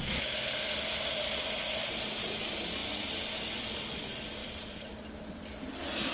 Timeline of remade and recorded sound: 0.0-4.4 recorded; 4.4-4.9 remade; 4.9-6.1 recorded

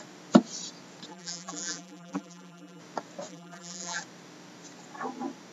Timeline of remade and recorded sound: 0.0-1.1 recorded; 1.1-2.8 remade; 2.8-3.3 recorded; 3.3-4.0 remade; 4.0-5.5 recorded